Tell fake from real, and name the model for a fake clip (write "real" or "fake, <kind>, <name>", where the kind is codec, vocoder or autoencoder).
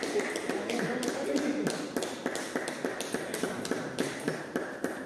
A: real